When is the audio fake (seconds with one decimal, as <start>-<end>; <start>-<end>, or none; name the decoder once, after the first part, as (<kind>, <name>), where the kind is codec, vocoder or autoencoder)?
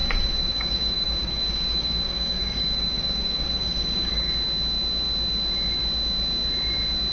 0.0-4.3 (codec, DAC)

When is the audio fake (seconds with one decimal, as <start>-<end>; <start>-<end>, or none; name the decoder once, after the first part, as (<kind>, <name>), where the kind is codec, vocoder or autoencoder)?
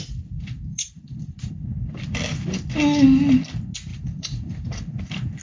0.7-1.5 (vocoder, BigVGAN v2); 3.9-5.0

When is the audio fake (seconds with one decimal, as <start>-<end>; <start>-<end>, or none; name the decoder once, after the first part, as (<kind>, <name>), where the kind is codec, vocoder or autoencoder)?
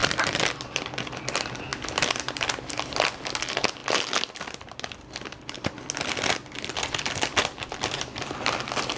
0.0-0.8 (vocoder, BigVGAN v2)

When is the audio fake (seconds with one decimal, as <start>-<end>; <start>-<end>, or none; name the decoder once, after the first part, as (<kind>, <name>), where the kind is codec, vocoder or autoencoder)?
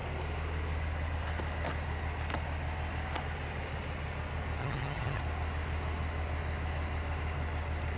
4.6-5.2 (vocoder, HiFi-GAN)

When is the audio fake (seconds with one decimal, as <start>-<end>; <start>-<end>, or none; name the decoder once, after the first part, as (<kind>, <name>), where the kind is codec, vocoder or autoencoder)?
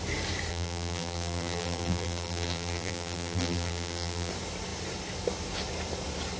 0.5-4.3 (vocoder, BigVGAN v2)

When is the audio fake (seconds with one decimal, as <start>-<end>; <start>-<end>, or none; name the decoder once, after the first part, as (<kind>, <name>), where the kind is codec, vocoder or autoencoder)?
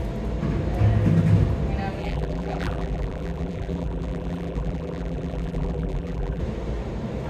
2.0-6.4 (vocoder, BigVGAN v2)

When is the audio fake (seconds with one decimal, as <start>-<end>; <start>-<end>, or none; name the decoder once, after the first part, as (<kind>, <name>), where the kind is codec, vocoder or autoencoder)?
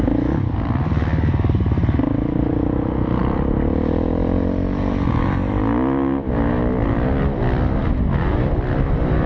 none